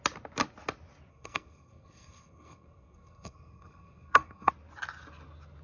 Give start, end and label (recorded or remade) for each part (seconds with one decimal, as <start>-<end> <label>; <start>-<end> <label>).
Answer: 0.0-1.1 recorded; 1.1-4.5 remade; 4.5-5.6 recorded